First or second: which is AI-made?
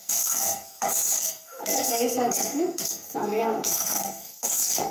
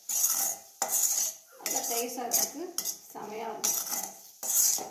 first